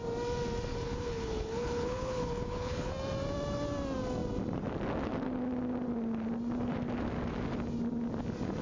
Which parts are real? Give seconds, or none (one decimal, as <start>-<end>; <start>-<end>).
0.0-0.7; 2.9-8.6